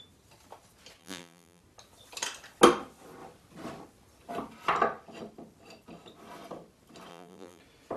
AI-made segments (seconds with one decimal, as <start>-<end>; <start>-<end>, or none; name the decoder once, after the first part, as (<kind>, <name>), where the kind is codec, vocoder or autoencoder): 1.0-1.6 (vocoder, BigVGAN v2); 7.1-7.6